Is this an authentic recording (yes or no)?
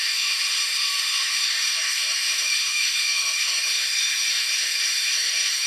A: no